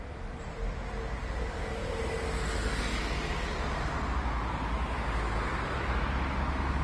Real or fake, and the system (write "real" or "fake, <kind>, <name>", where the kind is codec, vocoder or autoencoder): real